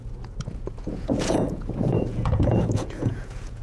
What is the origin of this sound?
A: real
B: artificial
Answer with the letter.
B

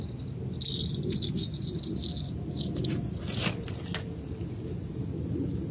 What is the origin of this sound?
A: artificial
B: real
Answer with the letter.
B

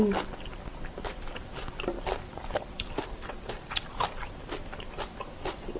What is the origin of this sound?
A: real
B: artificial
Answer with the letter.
A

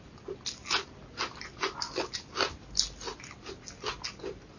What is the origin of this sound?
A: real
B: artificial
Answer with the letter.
A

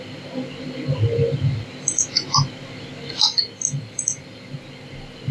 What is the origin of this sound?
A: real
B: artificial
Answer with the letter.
A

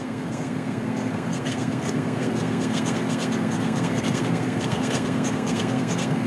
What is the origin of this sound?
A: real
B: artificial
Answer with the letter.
B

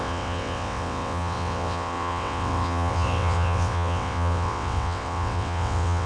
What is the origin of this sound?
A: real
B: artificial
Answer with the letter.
B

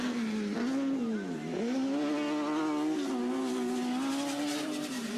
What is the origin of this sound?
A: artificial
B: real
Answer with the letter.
B